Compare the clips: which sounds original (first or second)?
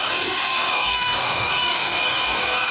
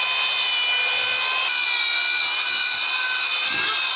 second